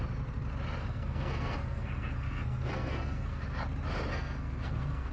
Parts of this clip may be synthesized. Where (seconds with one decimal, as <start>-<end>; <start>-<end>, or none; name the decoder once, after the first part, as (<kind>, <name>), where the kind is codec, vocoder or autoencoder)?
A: 0.8-3.4 (codec, SNAC); 4.1-5.1